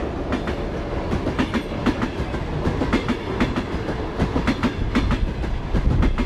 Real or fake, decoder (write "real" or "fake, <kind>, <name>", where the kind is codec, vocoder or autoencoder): real